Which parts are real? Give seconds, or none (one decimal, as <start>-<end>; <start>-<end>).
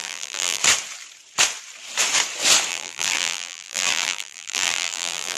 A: 0.6-2.7